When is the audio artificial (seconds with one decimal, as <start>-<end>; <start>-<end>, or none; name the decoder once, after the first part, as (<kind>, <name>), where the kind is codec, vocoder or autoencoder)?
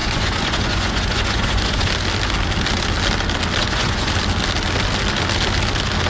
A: 0.0-1.9 (vocoder, Vocos); 3.6-4.1